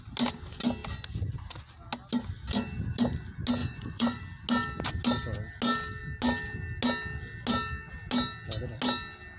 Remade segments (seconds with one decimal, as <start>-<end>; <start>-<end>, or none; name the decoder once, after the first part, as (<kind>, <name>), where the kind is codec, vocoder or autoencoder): 3.6-4.2 (vocoder, Vocos)